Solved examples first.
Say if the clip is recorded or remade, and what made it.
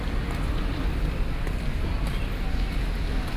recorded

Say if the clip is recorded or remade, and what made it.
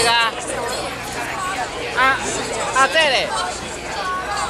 recorded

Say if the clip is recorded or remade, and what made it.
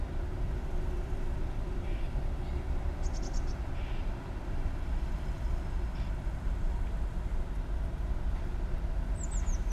recorded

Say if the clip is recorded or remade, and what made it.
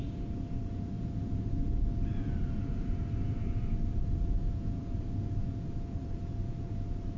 remade, vocoder, Vocos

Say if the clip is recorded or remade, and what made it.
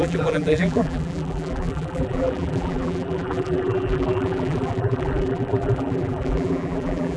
remade, vocoder, BigVGAN v2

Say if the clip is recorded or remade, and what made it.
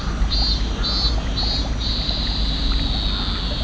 recorded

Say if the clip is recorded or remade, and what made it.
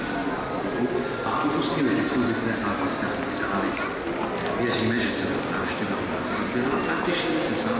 recorded